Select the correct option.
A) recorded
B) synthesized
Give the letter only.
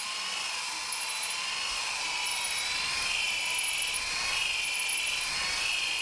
A